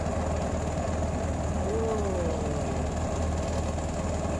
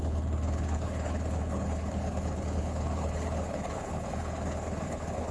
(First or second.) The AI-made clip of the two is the second